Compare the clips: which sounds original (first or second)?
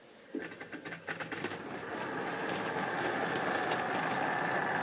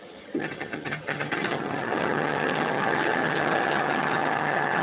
first